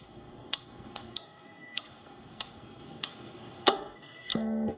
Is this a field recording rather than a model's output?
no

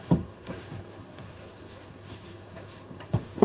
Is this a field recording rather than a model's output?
no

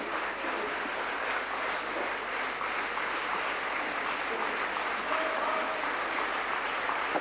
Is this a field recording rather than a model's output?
yes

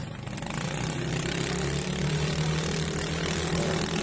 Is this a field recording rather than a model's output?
yes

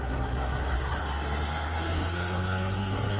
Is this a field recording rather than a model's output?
no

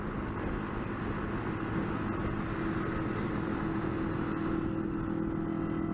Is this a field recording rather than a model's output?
yes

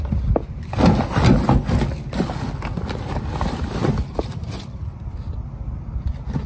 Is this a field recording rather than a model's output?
yes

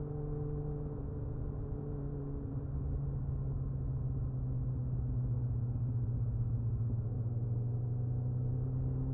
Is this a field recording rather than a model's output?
yes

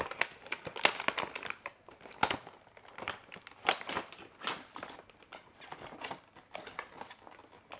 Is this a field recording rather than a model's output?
yes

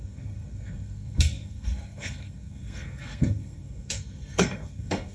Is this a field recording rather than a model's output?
no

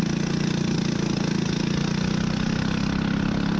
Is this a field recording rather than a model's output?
yes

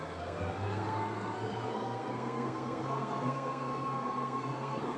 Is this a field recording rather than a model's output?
no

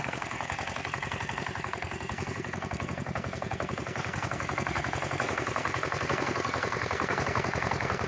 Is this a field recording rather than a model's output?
no